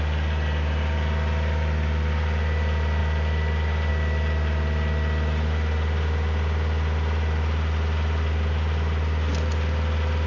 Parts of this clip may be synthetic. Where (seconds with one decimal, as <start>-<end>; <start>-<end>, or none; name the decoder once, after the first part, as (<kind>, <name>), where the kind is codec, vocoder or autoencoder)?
none